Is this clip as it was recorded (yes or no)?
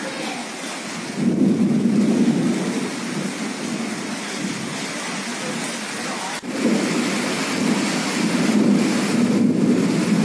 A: yes